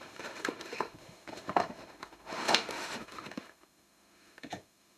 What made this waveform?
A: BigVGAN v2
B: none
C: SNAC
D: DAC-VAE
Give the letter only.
D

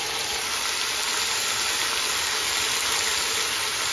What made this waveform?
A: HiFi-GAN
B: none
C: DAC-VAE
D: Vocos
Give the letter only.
B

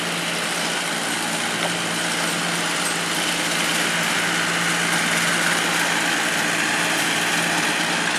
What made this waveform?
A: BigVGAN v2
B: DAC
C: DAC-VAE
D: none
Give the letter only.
D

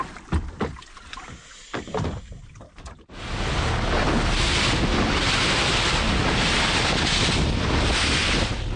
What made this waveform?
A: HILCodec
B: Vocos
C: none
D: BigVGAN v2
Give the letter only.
C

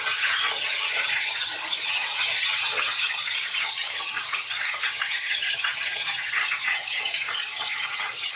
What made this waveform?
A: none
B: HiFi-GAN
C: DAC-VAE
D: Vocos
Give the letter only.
B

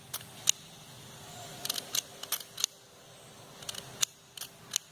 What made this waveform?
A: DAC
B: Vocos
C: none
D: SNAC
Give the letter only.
C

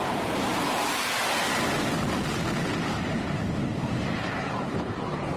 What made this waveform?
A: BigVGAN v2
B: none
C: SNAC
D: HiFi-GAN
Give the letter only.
A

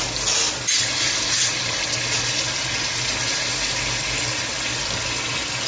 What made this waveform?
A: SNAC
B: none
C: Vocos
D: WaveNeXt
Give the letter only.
B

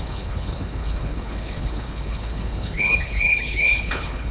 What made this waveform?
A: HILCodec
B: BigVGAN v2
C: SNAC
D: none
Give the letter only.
A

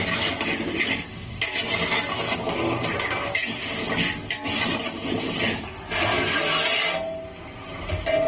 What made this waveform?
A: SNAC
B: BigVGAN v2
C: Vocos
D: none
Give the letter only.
D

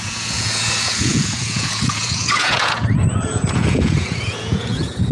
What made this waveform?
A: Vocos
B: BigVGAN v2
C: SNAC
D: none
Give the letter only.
A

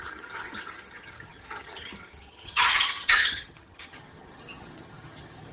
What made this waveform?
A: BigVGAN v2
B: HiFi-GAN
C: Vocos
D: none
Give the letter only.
B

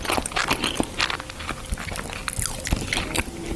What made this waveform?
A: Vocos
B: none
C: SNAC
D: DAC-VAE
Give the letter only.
B